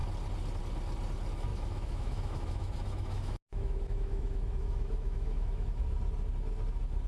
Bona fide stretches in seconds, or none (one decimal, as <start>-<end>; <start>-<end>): 0.0-1.5; 5.8-7.1